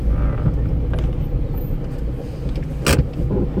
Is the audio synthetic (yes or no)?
no